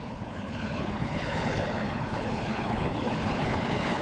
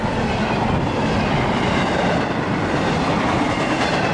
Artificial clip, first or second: first